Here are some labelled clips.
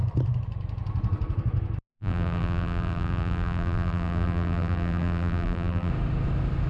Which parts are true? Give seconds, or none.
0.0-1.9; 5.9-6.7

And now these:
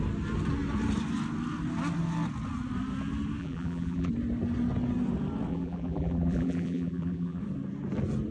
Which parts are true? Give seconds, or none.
0.0-3.4; 4.1-5.5; 7.4-8.3

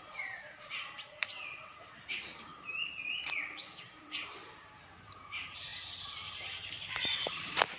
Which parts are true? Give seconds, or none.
4.4-5.0; 5.7-6.9

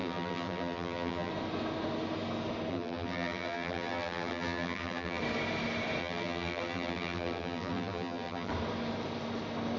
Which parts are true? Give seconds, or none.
1.3-2.7; 5.2-6.0; 8.5-9.8

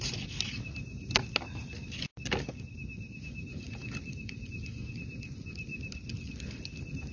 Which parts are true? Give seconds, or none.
0.0-7.1

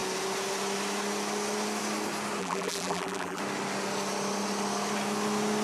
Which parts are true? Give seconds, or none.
0.0-2.4; 3.4-5.6

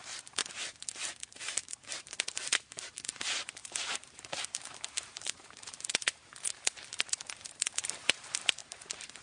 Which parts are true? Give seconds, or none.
0.4-1.2

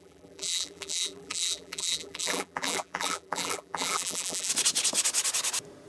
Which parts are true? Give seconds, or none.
4.5-5.9